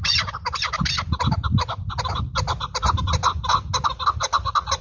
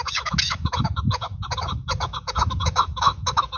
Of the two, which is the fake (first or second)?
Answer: second